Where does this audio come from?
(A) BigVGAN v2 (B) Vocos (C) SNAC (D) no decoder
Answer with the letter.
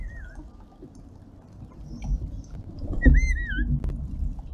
D